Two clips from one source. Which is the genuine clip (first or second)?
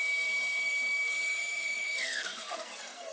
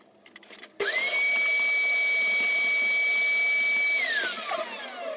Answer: second